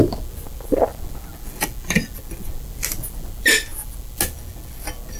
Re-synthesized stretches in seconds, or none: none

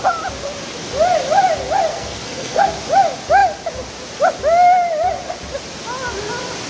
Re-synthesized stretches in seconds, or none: 1.9-2.7 (codec, SNAC)